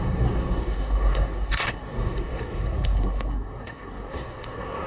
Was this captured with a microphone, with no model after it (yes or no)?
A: no